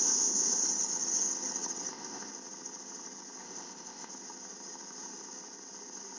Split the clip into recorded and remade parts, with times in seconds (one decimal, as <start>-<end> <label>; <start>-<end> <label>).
0.0-0.6 remade; 0.6-1.9 recorded; 1.9-2.3 remade; 2.3-3.4 recorded; 3.4-4.1 remade; 4.1-6.2 recorded